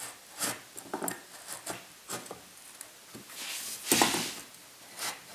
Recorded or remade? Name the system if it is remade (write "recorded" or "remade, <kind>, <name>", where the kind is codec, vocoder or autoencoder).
recorded